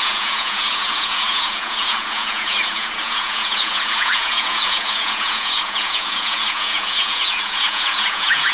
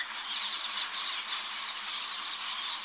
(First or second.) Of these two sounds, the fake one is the first